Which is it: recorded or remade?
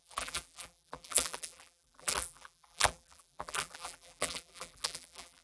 remade